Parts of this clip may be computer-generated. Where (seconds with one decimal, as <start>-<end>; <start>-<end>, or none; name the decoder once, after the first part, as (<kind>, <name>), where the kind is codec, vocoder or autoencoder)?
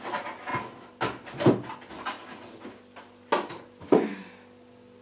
none